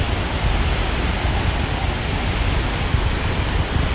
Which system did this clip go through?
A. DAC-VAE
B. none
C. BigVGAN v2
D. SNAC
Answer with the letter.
C